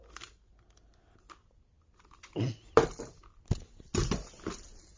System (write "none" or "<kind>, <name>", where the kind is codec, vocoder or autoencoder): none